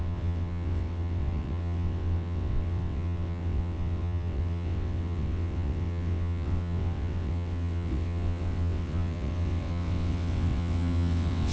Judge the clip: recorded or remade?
remade